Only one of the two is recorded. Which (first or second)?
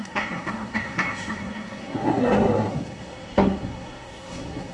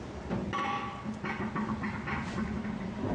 second